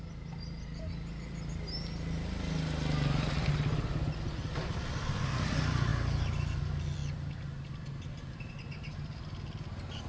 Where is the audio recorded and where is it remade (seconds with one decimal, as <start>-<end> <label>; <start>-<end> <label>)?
0.0-10.1 recorded